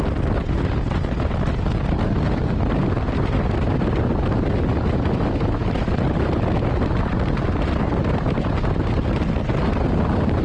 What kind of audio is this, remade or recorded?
recorded